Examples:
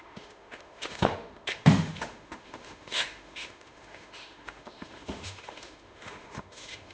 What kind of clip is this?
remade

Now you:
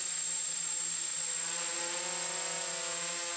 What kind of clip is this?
recorded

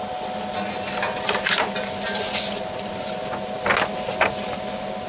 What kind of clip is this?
recorded